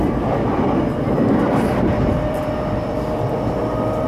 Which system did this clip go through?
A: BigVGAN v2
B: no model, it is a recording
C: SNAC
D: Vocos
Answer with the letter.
A